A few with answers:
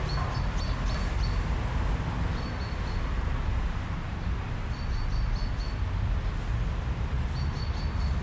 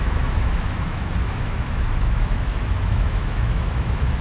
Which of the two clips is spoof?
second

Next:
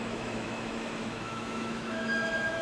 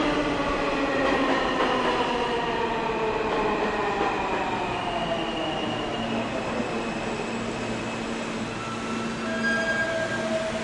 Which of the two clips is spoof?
first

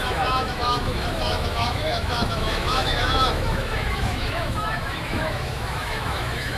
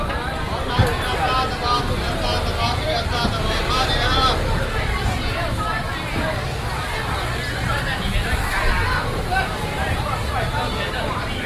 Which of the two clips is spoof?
first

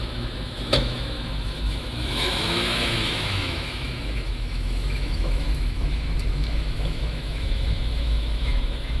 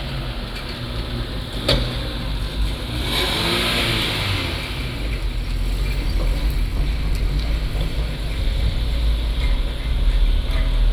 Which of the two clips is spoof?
first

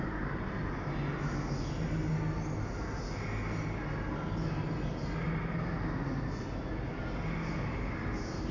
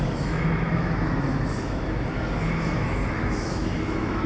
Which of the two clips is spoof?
second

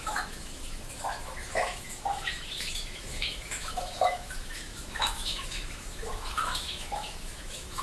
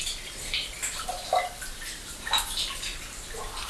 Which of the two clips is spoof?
first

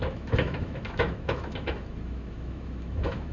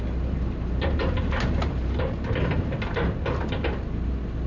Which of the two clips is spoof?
first